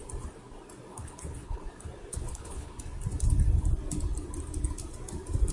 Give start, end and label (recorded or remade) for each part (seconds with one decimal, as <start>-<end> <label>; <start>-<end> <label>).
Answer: 0.0-0.9 recorded; 0.9-1.6 remade; 1.6-2.1 recorded; 2.1-2.7 remade; 2.7-5.5 recorded